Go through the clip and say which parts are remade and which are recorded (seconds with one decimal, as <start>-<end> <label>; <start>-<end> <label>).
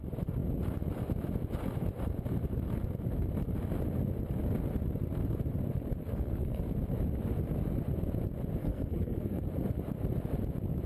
0.0-6.0 recorded; 6.0-6.6 remade; 6.6-8.6 recorded; 8.6-9.4 remade; 9.4-10.9 recorded